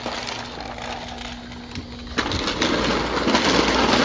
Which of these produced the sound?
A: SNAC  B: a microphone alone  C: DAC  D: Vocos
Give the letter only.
B